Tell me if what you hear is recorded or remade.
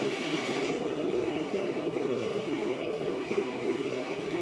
remade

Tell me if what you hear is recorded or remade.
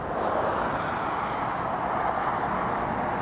recorded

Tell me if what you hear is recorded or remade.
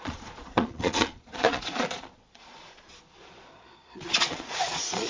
remade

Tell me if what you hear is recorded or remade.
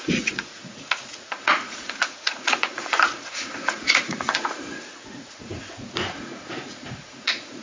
remade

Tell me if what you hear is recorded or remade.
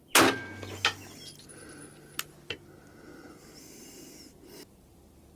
recorded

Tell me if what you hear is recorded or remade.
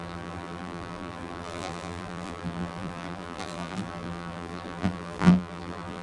remade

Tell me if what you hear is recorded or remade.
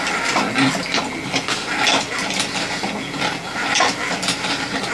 recorded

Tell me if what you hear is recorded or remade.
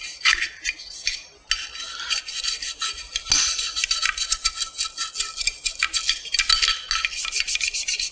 recorded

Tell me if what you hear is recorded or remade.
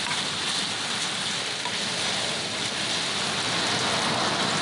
recorded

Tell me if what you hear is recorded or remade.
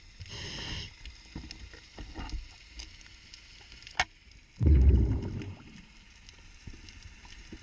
recorded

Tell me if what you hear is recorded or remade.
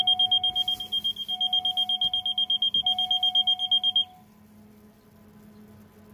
recorded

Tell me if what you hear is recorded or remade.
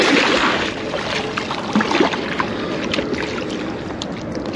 recorded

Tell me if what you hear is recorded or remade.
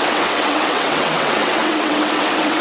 remade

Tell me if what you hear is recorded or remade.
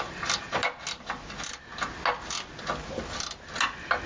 recorded